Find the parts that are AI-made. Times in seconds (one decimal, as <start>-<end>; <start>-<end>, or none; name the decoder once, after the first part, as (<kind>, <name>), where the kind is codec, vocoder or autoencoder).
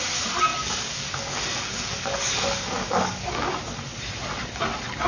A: 0.5-3.6 (codec, DAC)